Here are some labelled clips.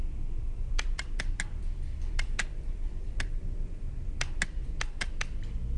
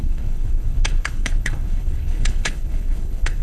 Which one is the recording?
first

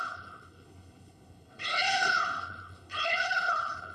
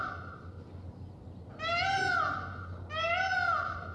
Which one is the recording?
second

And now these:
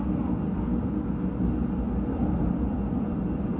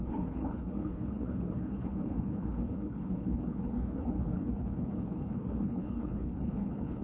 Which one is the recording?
first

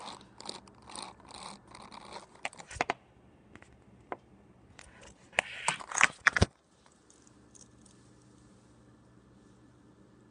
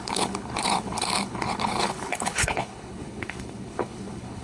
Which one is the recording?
first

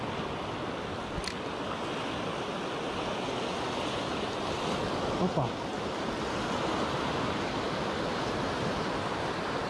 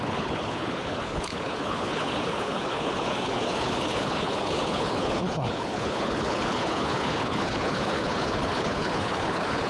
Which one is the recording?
first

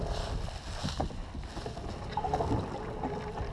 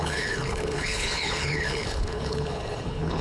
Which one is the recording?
first